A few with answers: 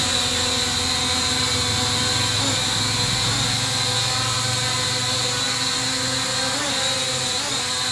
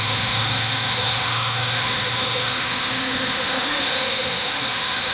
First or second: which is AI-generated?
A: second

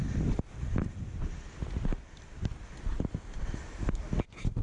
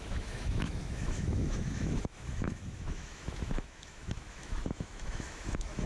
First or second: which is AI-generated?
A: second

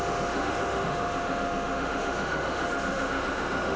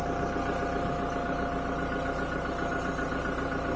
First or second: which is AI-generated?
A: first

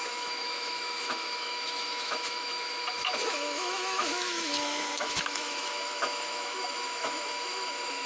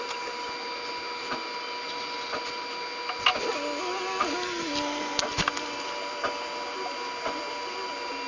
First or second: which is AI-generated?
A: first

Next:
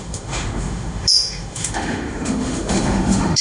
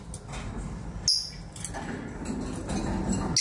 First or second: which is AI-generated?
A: first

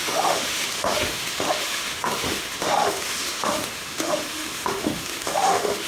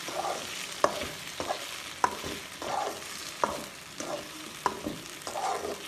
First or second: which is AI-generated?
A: first